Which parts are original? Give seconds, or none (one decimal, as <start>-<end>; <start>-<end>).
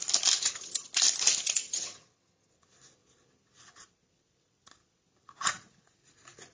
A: 0.0-0.4; 0.9-1.6; 2.5-6.5